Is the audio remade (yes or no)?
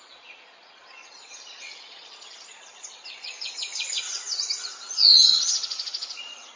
yes